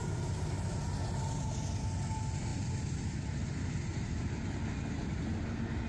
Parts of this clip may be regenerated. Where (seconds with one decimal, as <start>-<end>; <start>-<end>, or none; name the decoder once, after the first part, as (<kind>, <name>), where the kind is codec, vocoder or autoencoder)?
none